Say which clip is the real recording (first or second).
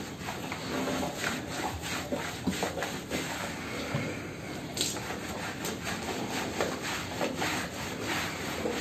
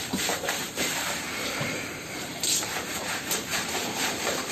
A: first